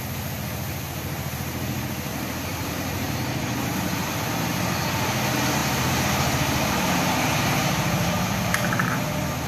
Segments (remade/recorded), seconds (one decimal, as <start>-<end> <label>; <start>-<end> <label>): 0.0-2.1 recorded; 2.1-3.1 remade; 3.1-3.7 recorded; 3.7-4.6 remade; 4.6-5.6 recorded; 5.6-9.0 remade; 9.0-9.5 recorded